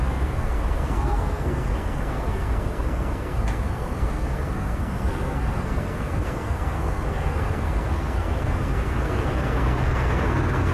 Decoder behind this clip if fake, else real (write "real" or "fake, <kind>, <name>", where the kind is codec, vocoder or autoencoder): fake, codec, SNAC